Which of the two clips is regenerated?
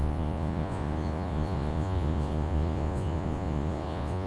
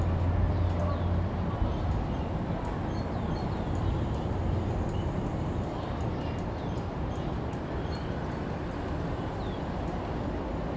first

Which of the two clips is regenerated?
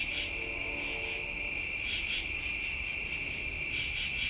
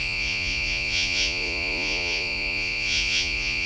second